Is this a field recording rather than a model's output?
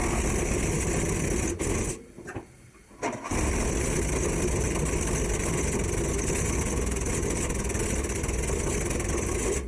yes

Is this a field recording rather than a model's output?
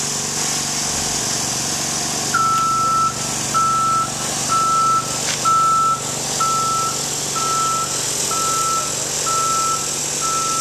yes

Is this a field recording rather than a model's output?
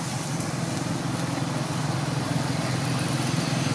yes